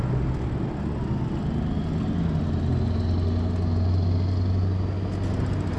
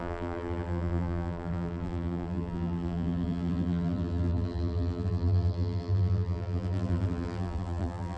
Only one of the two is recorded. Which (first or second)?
first